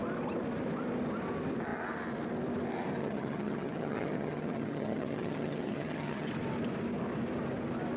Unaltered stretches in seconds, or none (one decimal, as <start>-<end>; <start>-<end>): 0.0-3.0; 6.3-8.0